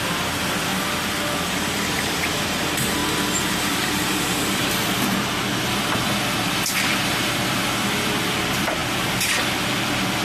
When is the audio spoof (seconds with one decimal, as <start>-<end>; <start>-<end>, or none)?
0.0-0.7; 1.5-10.2